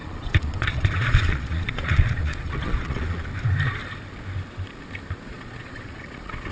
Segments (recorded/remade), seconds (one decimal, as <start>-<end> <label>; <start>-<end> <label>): 0.0-3.3 remade; 3.3-5.2 recorded; 5.2-6.5 remade